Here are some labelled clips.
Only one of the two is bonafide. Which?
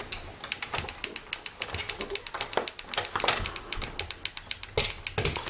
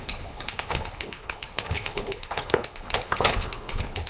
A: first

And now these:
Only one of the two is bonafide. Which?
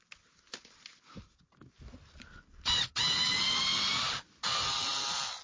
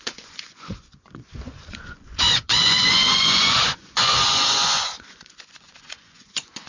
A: first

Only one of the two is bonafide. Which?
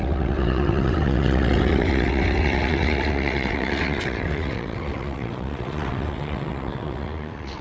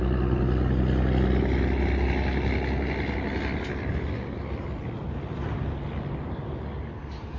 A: second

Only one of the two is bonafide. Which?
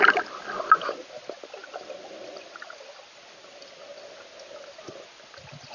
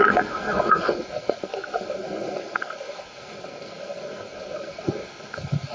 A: first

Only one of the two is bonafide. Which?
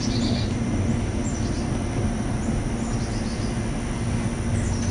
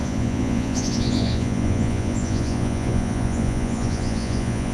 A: first